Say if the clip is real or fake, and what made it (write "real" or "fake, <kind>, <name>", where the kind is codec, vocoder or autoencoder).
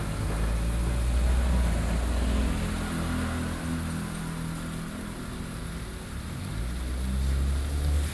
real